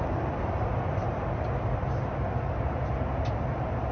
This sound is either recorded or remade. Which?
recorded